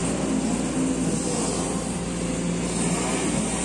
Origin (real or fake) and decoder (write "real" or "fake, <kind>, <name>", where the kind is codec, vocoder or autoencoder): real